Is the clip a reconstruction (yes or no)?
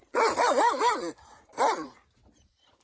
yes